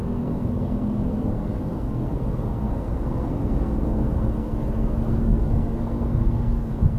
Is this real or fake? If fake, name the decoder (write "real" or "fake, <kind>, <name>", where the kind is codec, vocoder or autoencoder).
fake, codec, SNAC